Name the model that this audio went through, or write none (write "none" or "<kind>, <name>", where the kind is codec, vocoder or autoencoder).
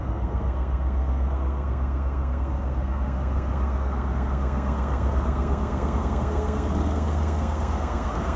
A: codec, SNAC